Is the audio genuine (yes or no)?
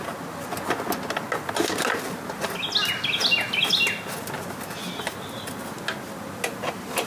yes